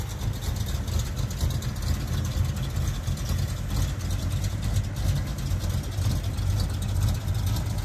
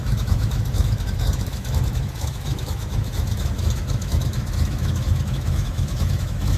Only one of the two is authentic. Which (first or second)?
first